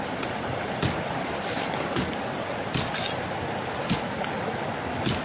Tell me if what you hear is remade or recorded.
recorded